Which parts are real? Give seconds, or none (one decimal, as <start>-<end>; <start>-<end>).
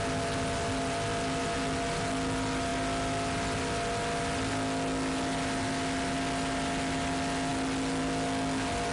0.0-8.9